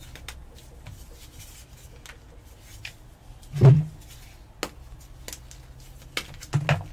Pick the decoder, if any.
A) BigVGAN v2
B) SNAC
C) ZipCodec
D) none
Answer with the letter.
D